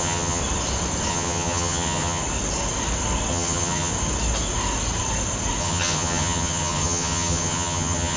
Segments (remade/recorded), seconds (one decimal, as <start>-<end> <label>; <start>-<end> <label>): 0.0-0.4 remade; 0.4-1.1 recorded; 1.1-2.2 remade; 2.2-3.3 recorded; 3.3-3.9 remade; 3.9-5.6 recorded; 5.6-8.2 remade